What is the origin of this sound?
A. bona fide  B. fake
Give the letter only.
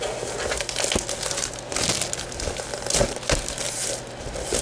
A